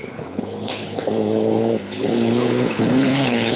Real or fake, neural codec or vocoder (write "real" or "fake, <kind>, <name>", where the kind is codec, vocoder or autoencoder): fake, codec, HILCodec